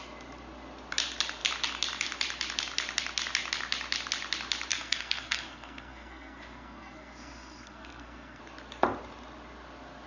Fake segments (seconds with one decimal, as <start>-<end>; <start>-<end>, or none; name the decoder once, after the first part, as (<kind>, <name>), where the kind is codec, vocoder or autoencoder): 4.7-8.4 (codec, SNAC)